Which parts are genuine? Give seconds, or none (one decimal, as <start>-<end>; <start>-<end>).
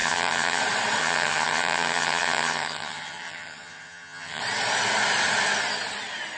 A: 0.6-1.0; 4.4-6.4